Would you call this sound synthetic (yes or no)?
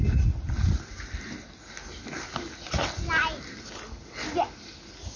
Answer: no